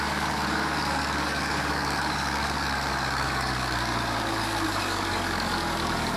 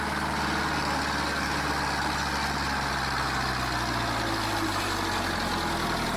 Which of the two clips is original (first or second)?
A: second